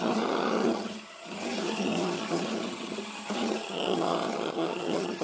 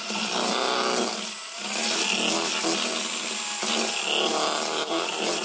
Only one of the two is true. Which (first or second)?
second